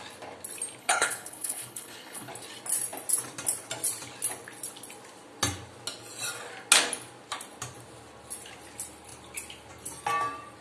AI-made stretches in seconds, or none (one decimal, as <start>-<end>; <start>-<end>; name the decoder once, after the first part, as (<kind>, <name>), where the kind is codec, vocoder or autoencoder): 0.8-2.3 (codec, HILCodec)